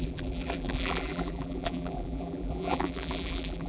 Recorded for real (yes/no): no